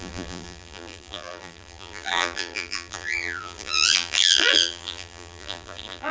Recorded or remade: remade